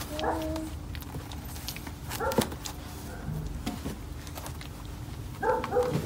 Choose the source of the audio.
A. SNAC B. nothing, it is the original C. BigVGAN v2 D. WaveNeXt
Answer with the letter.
B